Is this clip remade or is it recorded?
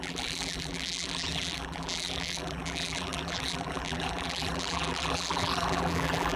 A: remade